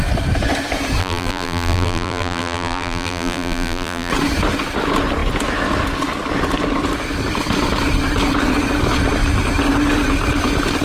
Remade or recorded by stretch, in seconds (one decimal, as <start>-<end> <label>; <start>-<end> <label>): 0.0-1.0 recorded; 1.0-4.1 remade; 4.1-10.8 recorded